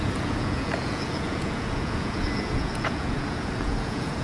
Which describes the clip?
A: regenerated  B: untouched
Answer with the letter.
A